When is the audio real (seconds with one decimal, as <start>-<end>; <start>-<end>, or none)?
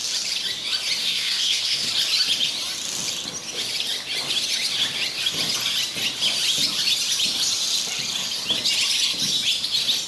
0.0-1.0; 1.9-10.1